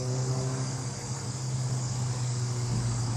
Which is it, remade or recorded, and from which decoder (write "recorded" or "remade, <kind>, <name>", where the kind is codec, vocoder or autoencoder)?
remade, codec, DAC